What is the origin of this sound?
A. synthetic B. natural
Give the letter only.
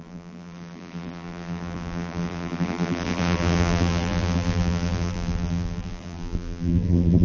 A